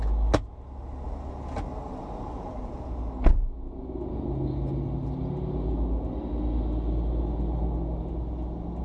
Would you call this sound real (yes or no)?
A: yes